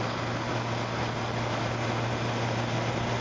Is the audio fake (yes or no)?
no